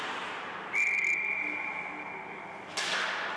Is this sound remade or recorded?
recorded